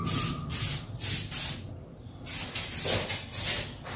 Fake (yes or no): no